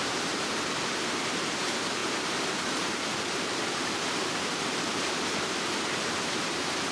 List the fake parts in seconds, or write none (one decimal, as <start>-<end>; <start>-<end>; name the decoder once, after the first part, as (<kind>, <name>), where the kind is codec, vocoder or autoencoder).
0.0-2.0 (vocoder, BigVGAN v2); 2.5-3.1; 4.1-6.9